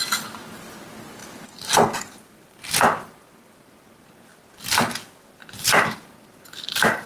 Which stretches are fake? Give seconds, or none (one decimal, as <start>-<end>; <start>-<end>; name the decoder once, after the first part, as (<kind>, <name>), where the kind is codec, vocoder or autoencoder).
none